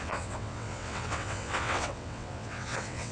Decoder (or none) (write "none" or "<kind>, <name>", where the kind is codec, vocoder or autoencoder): vocoder, WaveNeXt